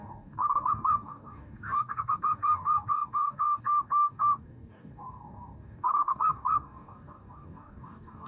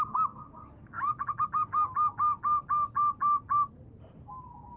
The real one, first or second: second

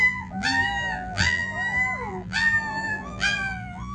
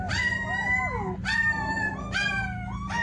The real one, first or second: second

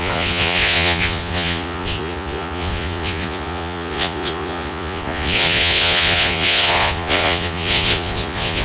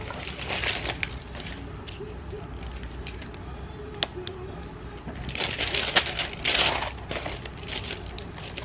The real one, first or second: second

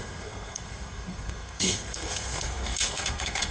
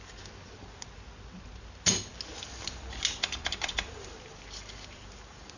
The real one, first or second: second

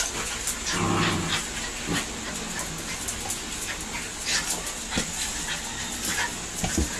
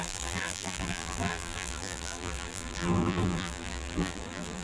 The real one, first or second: first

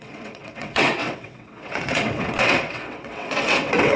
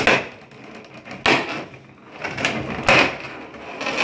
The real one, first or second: second